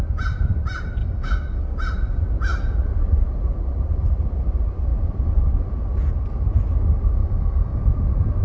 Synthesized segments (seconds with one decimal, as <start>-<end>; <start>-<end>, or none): 1.0-1.6; 7.2-7.8